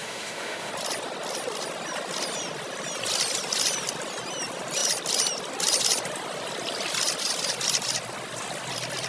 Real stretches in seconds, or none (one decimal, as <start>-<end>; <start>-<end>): 0.7-9.1